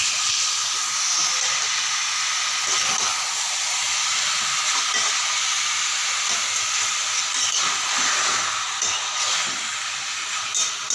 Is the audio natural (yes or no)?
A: yes